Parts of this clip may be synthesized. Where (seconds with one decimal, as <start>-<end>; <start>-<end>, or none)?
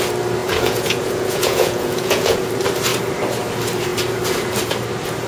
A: 0.4-2.5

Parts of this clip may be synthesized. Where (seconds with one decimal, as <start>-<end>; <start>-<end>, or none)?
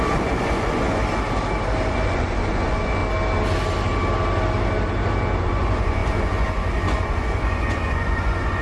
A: 0.0-1.0; 1.9-3.0; 5.4-8.6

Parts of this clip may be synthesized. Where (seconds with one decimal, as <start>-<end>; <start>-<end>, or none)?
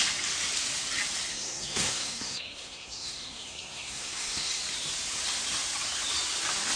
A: 1.3-4.6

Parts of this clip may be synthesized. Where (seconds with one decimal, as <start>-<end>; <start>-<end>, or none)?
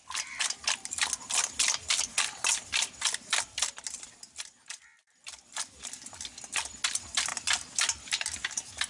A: none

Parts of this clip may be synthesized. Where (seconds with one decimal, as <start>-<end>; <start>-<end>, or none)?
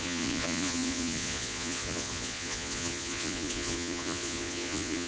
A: 0.0-5.1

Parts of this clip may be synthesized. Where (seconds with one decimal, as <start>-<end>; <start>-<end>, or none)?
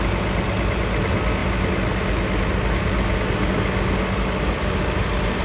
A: none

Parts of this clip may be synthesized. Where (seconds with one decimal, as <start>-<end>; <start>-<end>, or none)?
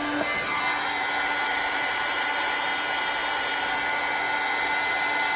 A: 1.5-2.7; 3.2-3.7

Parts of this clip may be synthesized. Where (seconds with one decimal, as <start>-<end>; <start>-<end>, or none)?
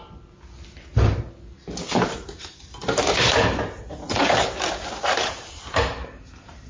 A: none